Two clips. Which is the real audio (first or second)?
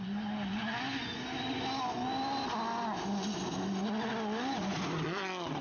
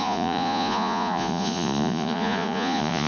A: first